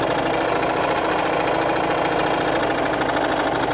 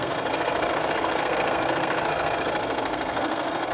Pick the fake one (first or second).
second